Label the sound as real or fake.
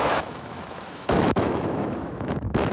fake